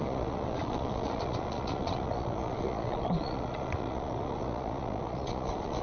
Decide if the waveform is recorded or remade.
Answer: remade